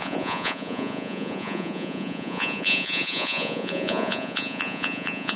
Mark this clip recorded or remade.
remade